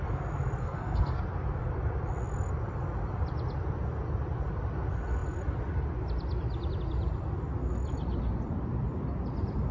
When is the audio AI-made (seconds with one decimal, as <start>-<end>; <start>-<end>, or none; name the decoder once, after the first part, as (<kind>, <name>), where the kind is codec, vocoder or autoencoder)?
0.6-1.2 (codec, SNAC)